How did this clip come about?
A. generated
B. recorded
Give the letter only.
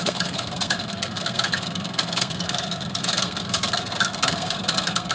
A